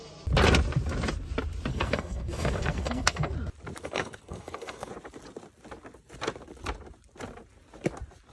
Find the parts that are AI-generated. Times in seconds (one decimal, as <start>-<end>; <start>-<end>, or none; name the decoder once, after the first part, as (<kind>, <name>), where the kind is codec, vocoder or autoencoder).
1.7-3.3 (codec, SNAC); 3.8-4.9